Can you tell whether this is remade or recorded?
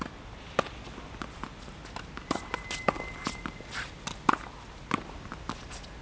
recorded